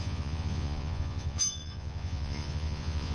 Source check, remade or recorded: remade